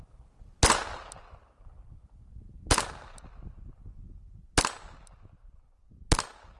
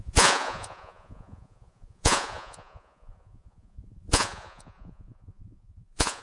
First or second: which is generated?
second